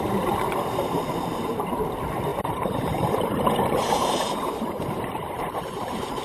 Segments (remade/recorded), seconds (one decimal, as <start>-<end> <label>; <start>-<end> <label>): 0.0-6.2 remade